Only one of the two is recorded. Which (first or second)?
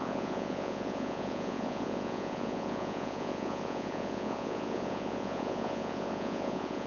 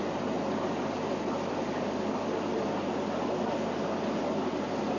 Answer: second